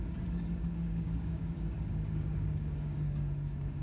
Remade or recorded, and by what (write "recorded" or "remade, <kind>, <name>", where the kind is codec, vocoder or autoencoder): remade, codec, DAC